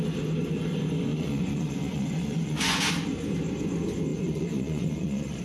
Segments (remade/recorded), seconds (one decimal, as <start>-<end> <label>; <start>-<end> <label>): 0.0-1.1 recorded; 1.1-2.8 remade; 2.8-4.1 recorded; 4.1-5.4 remade